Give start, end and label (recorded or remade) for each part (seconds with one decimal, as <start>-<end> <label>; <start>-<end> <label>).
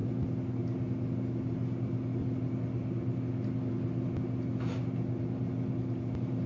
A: 0.0-6.5 recorded